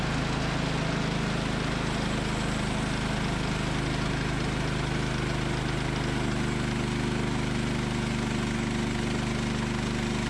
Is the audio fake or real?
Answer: real